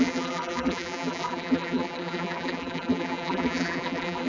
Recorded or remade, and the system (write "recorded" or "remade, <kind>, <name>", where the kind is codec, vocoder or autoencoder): remade, vocoder, BigVGAN v2